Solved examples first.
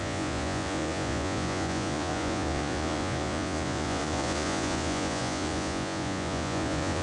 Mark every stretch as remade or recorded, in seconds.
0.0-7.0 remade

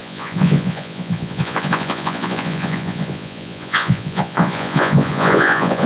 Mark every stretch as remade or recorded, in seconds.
0.0-5.9 remade

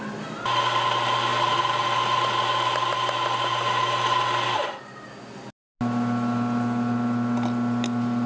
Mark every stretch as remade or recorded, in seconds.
0.0-8.3 recorded